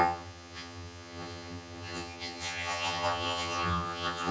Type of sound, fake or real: fake